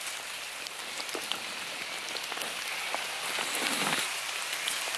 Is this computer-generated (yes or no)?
no